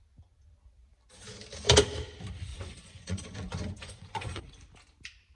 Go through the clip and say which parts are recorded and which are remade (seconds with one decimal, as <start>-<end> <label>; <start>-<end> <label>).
0.0-2.5 recorded; 2.5-4.4 remade; 4.4-5.4 recorded